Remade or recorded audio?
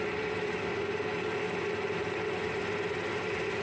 recorded